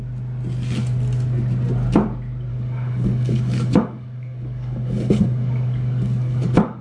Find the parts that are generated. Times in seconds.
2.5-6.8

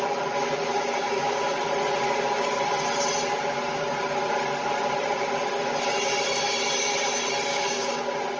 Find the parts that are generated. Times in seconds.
0.7-1.6; 7.5-8.0

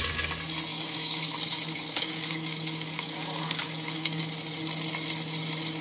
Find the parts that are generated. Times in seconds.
0.7-4.2

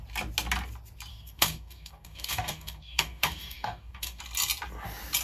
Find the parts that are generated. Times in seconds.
1.1-4.2

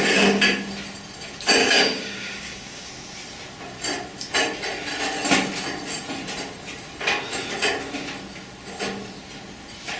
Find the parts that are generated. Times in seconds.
1.6-2.9

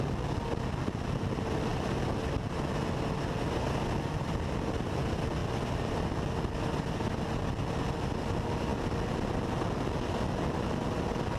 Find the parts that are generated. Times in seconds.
none

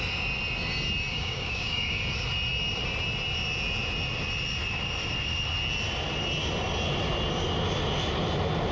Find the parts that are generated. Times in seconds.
1.1-2.0